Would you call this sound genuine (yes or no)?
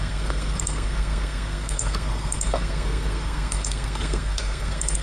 no